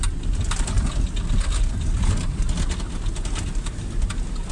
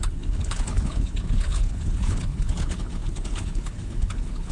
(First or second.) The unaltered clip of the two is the first